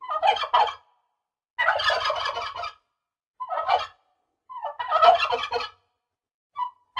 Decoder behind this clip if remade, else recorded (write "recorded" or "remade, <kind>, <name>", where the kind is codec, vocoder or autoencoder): recorded